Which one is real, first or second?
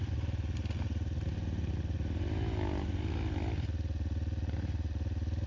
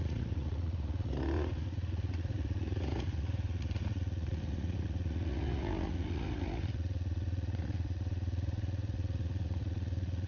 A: first